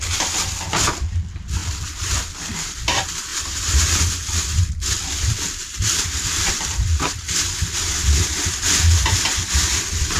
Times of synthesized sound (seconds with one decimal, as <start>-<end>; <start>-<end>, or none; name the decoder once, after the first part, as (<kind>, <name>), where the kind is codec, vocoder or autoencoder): 3.3-4.0 (vocoder, BigVGAN v2); 5.6-6.5